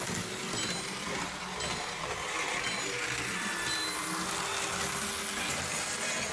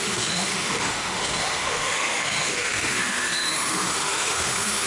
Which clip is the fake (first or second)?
second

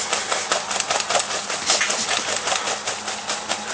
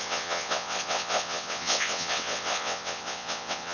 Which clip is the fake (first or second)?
second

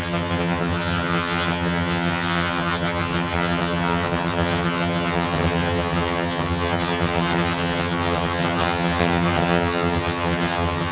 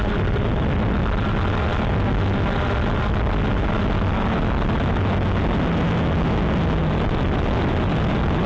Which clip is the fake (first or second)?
first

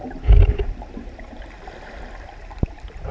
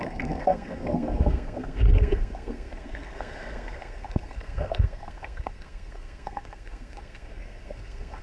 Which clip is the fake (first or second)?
second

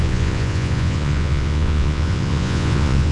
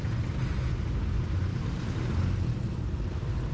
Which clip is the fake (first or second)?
first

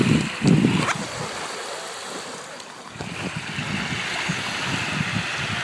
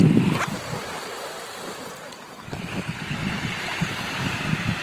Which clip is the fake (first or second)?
second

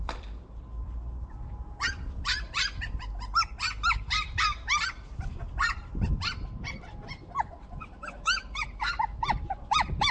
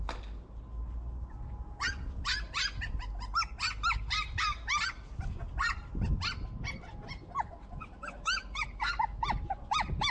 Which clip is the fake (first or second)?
first